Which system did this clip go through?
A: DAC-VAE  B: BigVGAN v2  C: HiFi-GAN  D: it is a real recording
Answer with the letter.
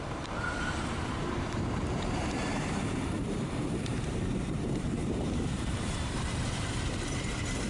B